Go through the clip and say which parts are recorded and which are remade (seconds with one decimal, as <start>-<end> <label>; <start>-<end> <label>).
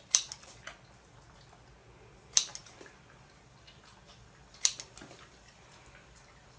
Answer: 0.0-6.6 recorded